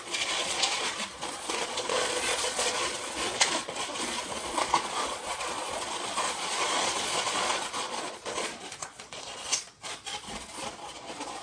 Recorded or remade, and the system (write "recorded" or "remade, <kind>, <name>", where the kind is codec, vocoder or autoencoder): remade, vocoder, Vocos